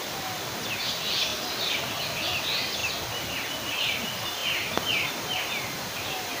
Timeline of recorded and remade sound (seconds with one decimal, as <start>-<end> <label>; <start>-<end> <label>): 0.0-2.8 recorded; 2.8-3.5 remade; 3.5-4.4 recorded; 4.4-5.1 remade; 5.1-6.4 recorded